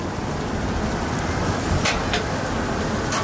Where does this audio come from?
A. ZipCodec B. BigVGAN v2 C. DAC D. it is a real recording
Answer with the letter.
D